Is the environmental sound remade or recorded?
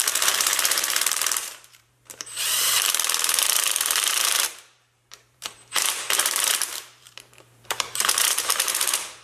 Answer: remade